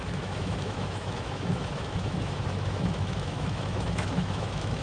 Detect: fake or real fake